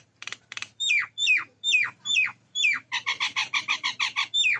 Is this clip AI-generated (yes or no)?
yes